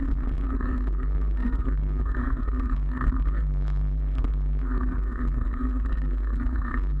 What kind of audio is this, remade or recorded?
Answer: remade